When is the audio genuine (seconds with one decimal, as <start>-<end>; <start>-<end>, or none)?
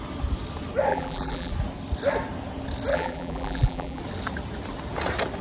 0.0-0.9; 1.5-2.9; 4.0-5.4